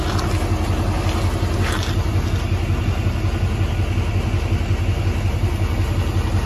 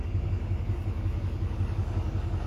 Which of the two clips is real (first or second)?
first